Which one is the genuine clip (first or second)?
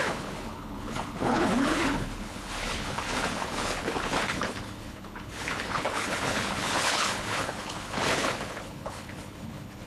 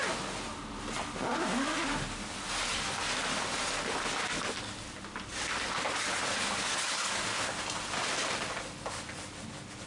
second